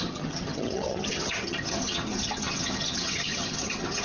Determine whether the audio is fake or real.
fake